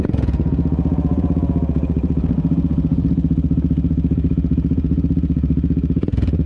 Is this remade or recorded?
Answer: remade